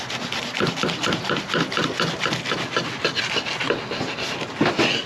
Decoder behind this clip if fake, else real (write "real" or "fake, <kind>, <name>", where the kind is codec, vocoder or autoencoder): real